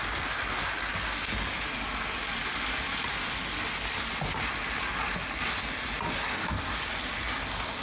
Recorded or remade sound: recorded